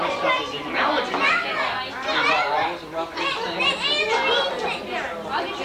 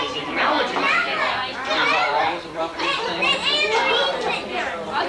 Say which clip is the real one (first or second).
first